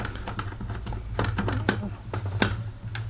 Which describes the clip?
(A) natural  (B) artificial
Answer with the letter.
A